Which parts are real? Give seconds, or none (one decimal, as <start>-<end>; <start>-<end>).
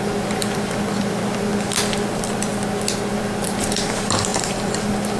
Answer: 1.5-2.1; 2.5-3.1